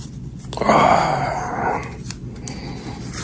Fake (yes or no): no